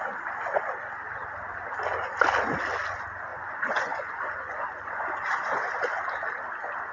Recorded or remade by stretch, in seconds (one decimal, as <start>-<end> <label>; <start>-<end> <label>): 0.0-3.3 recorded; 3.3-5.7 remade; 5.7-6.9 recorded